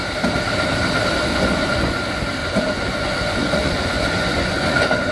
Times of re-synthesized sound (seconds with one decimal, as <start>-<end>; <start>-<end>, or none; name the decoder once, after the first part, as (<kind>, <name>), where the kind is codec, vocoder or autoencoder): 1.3-2.0 (vocoder, Vocos); 2.4-5.1